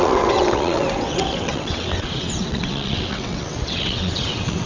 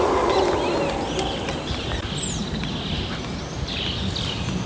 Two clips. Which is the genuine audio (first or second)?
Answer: second